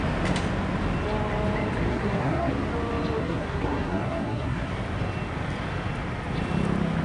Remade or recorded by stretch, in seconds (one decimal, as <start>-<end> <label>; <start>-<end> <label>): 0.0-1.9 recorded; 1.9-2.5 remade; 2.5-3.2 recorded; 3.2-4.7 remade; 4.7-7.0 recorded

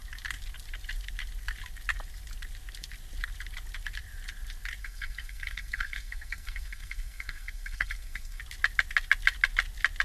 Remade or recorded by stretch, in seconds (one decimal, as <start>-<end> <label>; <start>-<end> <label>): 0.0-4.8 recorded; 4.8-8.4 remade; 8.4-10.0 recorded